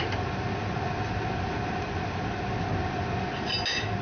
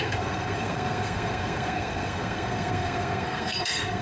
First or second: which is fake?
second